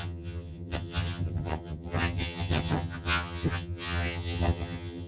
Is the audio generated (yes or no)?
yes